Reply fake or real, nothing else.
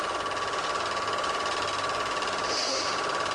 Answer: real